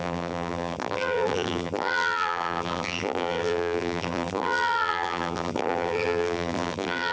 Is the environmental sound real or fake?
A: fake